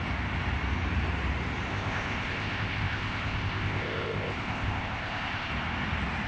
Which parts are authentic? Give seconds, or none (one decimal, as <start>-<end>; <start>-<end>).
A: 0.0-1.7; 5.5-6.3